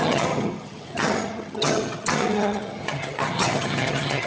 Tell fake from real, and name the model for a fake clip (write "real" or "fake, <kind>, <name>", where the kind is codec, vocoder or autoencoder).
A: fake, vocoder, HiFi-GAN